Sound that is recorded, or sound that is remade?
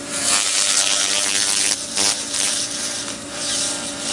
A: remade